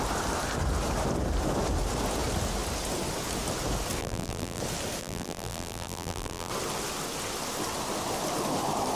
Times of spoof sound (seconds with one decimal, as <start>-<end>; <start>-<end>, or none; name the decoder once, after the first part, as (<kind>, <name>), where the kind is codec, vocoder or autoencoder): 4.0-4.6 (vocoder, BigVGAN v2); 5.0-6.5